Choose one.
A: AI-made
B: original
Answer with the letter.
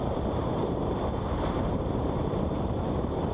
A